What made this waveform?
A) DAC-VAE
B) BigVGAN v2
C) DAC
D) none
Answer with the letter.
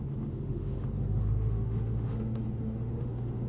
A